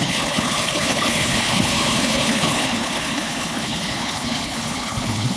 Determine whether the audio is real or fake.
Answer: fake